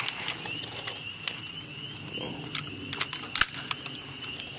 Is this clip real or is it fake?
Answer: real